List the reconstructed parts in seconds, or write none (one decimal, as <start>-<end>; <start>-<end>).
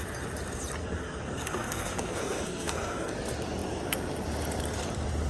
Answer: 0.8-3.1